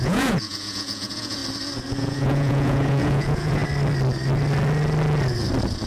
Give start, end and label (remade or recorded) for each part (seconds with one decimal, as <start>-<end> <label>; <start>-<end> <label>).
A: 0.0-1.4 remade; 1.4-2.0 recorded; 2.0-3.6 remade; 3.6-5.9 recorded